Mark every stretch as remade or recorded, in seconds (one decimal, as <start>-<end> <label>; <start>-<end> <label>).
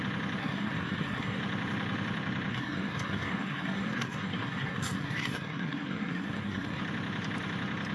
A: 0.0-0.4 recorded; 0.4-1.4 remade; 1.4-2.5 recorded; 2.5-6.8 remade; 6.8-7.9 recorded